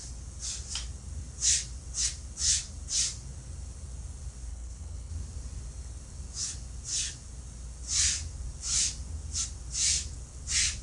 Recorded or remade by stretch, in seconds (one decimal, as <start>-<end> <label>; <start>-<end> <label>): 0.0-4.5 recorded; 4.5-5.1 remade; 5.1-10.8 recorded